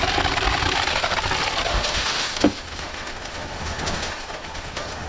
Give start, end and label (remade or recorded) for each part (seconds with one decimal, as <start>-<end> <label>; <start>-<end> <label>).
0.0-1.7 recorded; 1.7-5.1 remade